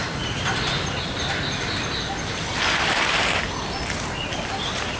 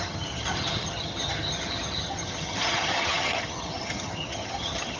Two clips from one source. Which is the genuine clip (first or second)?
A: first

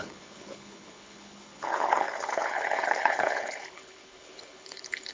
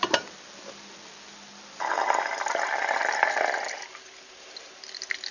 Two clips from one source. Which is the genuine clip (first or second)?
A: second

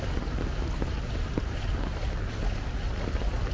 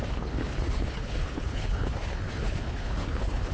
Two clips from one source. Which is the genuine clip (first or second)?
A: first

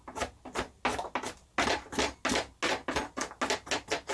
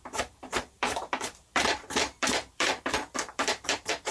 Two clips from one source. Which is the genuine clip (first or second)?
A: first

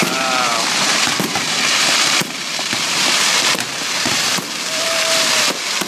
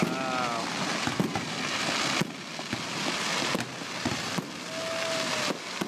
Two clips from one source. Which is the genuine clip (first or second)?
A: second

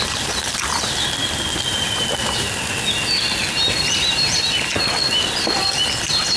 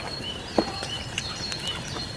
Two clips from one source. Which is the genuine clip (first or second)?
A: first